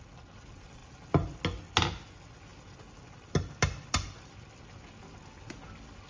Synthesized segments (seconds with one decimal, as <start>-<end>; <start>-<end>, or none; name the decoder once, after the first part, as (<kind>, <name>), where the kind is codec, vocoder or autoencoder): none

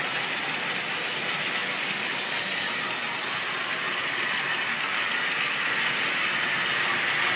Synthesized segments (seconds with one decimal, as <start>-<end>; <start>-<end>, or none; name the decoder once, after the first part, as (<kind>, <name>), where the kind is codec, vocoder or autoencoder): none

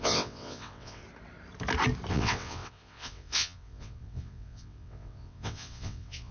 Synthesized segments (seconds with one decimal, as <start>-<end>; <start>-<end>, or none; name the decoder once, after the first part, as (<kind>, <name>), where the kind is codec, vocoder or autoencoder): 0.0-1.0 (vocoder, WaveNeXt); 2.1-6.3